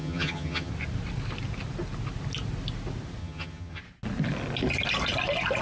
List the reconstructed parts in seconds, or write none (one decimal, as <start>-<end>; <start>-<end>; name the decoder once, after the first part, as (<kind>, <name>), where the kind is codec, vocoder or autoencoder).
0.0-0.7 (vocoder, HiFi-GAN); 3.2-3.8